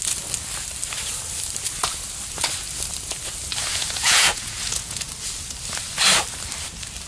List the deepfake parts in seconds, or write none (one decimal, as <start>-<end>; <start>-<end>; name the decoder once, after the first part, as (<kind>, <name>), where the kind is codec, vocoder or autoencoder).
3.7-5.1 (vocoder, Vocos)